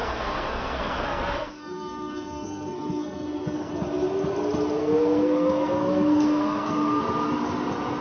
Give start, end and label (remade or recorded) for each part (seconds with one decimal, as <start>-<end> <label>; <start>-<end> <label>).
0.0-3.7 remade; 3.7-4.8 recorded; 4.8-7.0 remade; 7.0-8.0 recorded